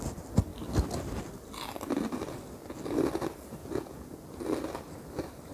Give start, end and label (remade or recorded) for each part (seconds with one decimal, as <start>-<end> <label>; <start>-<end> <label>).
0.0-3.6 recorded; 3.6-4.4 remade; 4.4-5.5 recorded